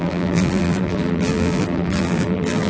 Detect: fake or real fake